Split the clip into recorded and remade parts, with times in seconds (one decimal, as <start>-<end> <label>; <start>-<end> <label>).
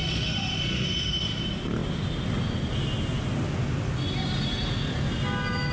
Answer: 0.0-1.4 remade; 1.4-5.7 recorded